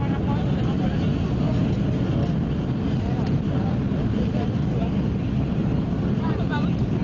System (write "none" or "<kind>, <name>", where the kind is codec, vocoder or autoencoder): none